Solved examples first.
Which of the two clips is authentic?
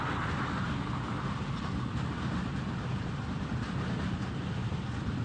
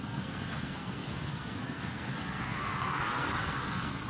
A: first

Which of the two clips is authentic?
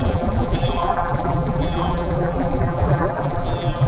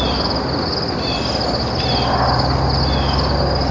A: second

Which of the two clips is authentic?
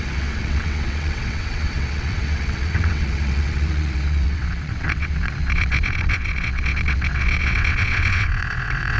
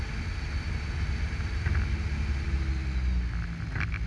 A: second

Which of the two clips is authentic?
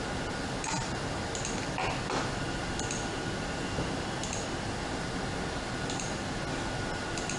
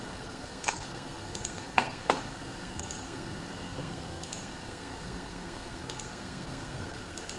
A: first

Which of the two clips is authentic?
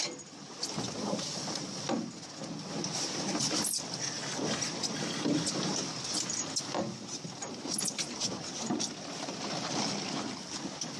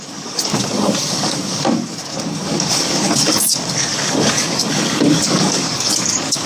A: first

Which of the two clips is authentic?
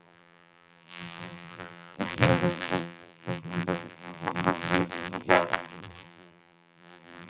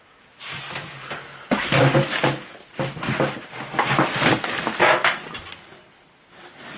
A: second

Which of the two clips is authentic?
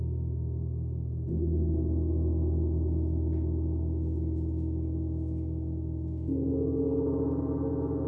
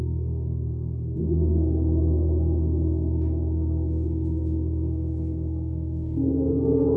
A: first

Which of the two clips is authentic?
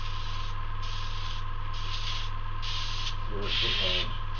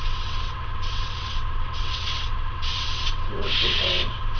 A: first